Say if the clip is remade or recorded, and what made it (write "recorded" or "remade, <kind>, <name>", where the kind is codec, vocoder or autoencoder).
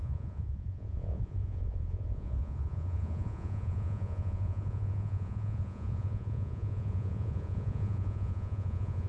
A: remade, vocoder, Vocos